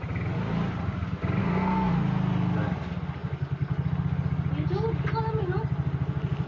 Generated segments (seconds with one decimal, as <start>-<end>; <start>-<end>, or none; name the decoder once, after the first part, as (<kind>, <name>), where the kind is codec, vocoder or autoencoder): 1.4-1.9 (codec, SNAC)